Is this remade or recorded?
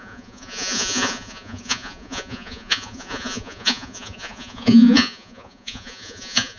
remade